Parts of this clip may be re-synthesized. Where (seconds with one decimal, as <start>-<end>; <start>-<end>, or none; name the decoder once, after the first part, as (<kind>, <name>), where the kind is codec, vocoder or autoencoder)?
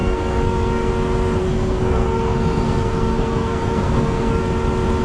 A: 0.0-0.9 (codec, SNAC); 1.4-4.4